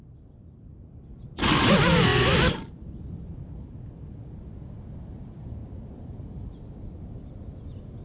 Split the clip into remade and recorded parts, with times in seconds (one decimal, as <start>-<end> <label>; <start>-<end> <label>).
0.0-8.0 recorded

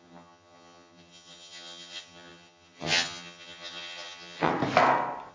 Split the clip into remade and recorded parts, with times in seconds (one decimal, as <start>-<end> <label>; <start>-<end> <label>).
0.0-4.5 remade; 4.5-5.3 recorded

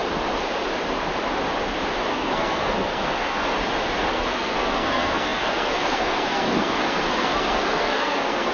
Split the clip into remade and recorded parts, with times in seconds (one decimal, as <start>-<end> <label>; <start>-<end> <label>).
0.0-2.1 recorded; 2.1-3.4 remade; 3.4-4.1 recorded; 4.1-8.5 remade

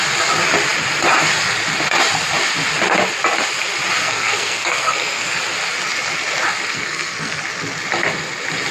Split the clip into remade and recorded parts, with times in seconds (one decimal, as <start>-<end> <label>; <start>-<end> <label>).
0.0-4.0 recorded; 4.0-5.4 remade; 5.4-6.7 recorded; 6.7-7.4 remade; 7.4-8.7 recorded